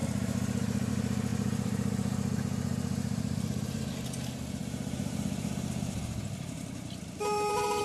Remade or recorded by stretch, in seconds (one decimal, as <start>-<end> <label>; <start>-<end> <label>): 0.0-0.9 remade; 0.9-1.3 recorded; 1.3-3.9 remade; 3.9-4.6 recorded; 4.6-7.8 remade